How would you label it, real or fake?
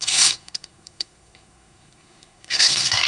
fake